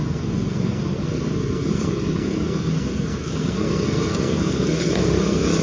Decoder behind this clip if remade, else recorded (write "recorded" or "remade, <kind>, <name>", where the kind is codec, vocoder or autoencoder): remade, codec, SNAC